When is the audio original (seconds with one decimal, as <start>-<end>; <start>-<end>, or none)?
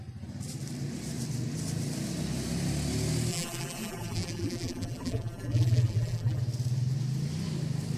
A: 0.0-3.3; 6.4-8.0